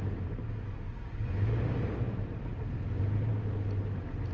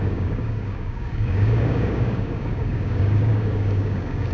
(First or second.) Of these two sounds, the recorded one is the first